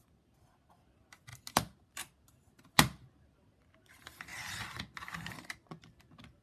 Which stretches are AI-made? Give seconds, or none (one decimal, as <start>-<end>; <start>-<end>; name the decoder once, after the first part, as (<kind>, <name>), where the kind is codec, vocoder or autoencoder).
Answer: none